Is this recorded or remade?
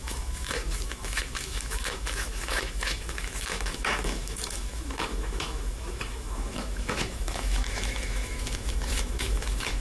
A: remade